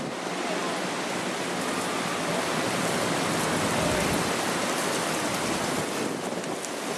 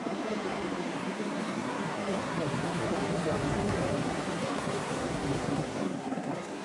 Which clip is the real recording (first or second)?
first